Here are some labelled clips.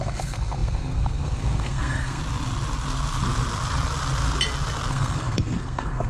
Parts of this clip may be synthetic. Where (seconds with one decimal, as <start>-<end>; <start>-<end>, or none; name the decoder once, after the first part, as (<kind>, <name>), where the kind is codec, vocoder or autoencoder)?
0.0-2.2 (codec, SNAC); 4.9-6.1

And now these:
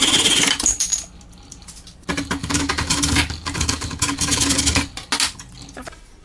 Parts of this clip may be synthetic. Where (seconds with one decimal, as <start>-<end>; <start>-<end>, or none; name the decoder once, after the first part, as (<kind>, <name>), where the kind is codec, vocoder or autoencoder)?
2.4-4.6 (codec, DAC)

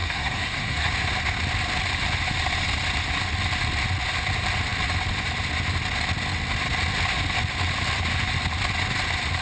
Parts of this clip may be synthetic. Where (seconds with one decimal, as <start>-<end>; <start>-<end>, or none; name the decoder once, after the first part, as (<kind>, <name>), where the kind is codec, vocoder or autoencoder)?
0.0-0.9 (codec, SNAC)

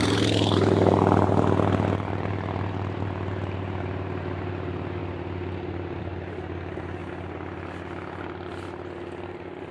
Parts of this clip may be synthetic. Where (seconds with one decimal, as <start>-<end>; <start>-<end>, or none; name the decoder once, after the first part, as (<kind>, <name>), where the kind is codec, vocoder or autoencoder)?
0.0-5.0 (vocoder, BigVGAN v2); 6.0-7.0